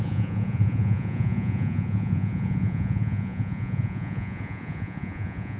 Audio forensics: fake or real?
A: fake